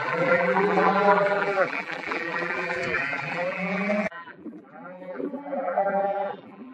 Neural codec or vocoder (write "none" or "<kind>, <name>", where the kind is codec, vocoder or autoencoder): vocoder, BigVGAN v2